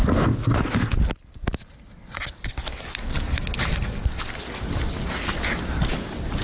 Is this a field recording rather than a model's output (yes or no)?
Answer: yes